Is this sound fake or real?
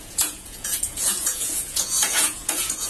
fake